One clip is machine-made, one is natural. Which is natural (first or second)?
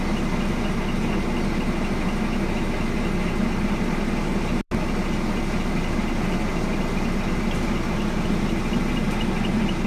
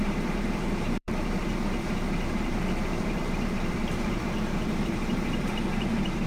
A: first